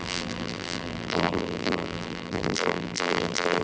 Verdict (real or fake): fake